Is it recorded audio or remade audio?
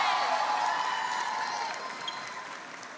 recorded